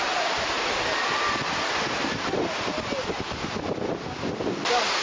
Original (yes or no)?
yes